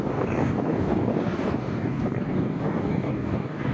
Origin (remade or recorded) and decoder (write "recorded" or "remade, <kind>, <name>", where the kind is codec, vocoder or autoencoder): remade, codec, DAC